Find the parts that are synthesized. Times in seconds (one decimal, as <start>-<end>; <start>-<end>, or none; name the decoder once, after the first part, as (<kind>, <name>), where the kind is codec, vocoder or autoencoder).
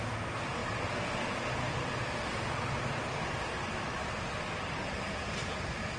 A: none